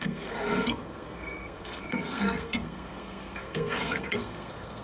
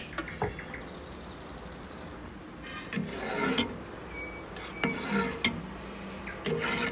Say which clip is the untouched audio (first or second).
second